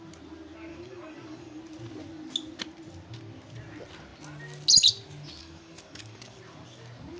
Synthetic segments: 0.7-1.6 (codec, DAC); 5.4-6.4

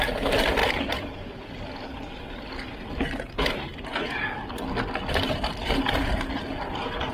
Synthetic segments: none

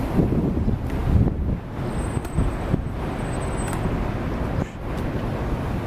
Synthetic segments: none